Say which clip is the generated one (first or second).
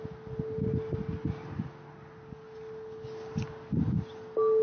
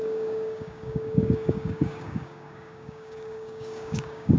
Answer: second